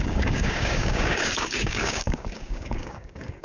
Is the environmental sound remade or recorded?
remade